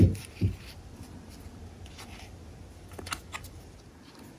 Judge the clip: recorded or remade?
recorded